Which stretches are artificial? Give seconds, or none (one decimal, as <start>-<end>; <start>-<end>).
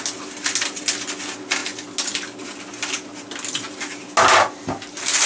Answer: none